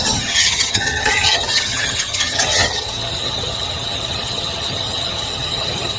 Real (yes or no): no